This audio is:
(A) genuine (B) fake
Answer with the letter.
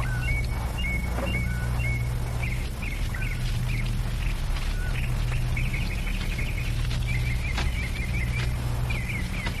A